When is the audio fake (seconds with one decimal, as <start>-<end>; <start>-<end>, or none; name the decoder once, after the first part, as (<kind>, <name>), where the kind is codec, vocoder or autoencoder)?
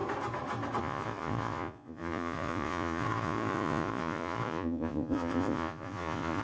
0.8-6.4 (vocoder, Vocos)